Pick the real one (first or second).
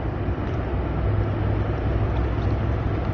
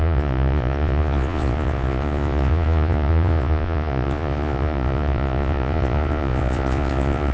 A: first